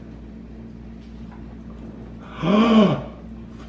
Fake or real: real